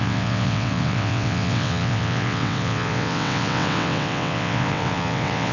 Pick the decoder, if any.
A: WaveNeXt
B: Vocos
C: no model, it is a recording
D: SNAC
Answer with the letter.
A